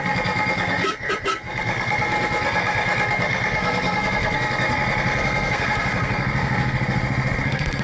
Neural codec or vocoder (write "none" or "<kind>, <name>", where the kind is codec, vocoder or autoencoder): codec, SNAC